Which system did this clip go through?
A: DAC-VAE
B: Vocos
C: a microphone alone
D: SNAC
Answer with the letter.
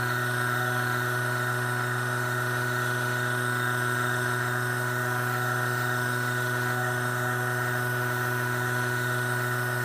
A